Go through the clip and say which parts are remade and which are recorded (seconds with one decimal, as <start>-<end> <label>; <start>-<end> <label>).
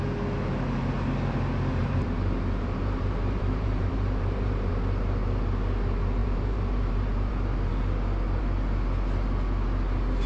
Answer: 0.0-1.8 recorded; 1.8-4.7 remade; 4.7-6.2 recorded; 6.2-7.3 remade; 7.3-10.3 recorded